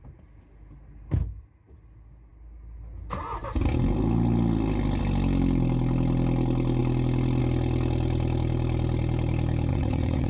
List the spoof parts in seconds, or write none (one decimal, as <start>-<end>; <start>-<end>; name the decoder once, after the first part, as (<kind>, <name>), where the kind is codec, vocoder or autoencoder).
9.7-10.3 (vocoder, WaveNeXt)